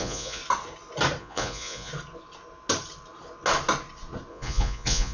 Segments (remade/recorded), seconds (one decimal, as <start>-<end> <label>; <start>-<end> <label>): 0.0-0.4 remade; 0.4-1.2 recorded; 1.2-1.9 remade; 1.9-4.3 recorded; 4.3-5.1 remade